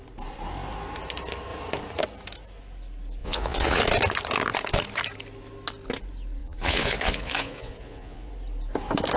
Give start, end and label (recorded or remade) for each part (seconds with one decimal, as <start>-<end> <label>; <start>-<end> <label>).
0.0-3.2 recorded; 3.2-3.8 remade; 3.8-6.4 recorded; 6.4-8.3 remade; 8.3-9.2 recorded

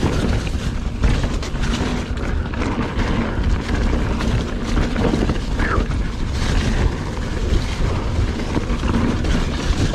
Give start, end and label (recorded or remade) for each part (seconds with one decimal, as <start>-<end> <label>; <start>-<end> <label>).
0.0-1.9 remade; 1.9-6.2 recorded; 6.2-9.9 remade